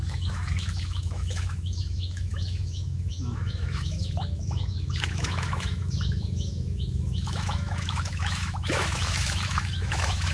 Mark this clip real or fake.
fake